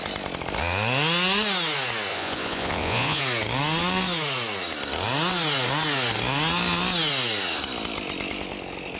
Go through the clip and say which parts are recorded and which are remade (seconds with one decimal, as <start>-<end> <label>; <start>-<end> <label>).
0.0-2.1 recorded; 2.1-3.2 remade; 3.2-9.0 recorded